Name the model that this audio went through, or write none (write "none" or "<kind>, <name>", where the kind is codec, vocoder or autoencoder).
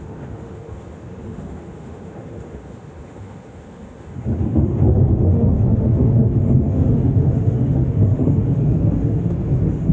autoencoder, DAC-VAE